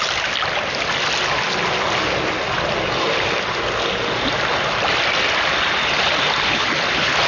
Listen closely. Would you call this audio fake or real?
real